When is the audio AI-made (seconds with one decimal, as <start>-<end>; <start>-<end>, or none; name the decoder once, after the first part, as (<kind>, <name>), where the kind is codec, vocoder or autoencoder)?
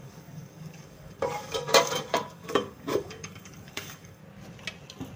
0.0-4.2 (codec, DAC)